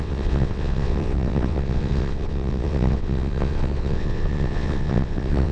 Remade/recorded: remade